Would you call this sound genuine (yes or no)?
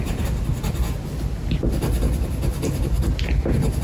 yes